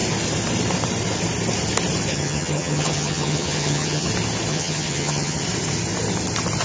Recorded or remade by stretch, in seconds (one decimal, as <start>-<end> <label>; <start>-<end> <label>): 0.0-2.1 recorded; 2.1-4.1 remade; 4.1-4.5 recorded; 4.5-5.4 remade; 5.4-6.6 recorded